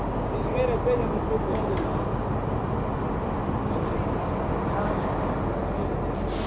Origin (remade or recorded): recorded